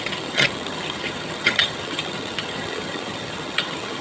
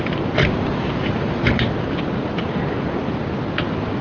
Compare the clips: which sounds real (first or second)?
second